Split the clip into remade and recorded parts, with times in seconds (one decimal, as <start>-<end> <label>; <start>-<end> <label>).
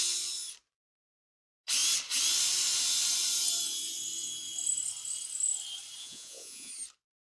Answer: 0.0-6.0 recorded; 6.0-6.7 remade; 6.7-7.3 recorded